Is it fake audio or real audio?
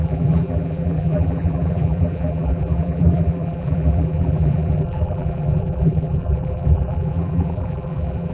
fake